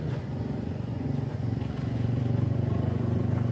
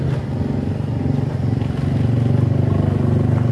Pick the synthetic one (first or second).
first